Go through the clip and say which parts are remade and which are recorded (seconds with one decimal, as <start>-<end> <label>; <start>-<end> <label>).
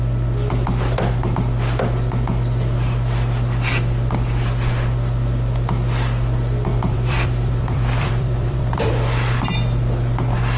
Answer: 0.0-6.7 recorded; 6.7-8.9 remade; 8.9-10.6 recorded